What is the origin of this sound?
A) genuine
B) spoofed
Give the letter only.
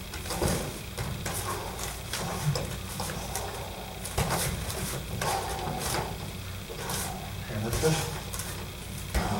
A